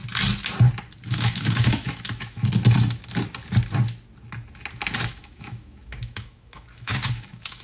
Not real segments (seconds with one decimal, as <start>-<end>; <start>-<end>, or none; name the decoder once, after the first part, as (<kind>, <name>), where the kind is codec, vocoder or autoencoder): 1.1-2.4 (autoencoder, DAC-VAE); 5.1-7.6